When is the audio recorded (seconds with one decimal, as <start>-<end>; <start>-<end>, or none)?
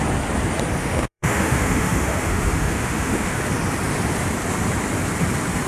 0.0-0.8; 3.4-5.7